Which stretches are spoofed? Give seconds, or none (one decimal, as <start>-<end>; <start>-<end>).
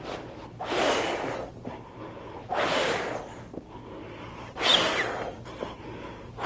none